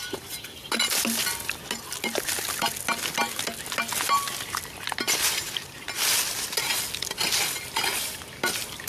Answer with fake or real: real